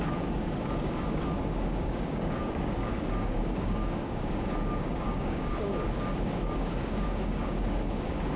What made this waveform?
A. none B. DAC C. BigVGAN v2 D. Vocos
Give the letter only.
B